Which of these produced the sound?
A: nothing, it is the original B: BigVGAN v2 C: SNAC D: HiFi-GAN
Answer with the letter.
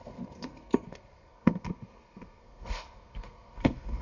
C